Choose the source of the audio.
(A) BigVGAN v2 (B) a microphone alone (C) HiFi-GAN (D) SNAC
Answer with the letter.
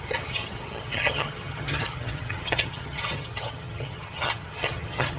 C